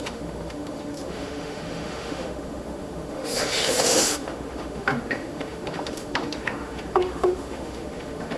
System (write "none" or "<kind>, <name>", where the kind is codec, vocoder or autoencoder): autoencoder, DAC-VAE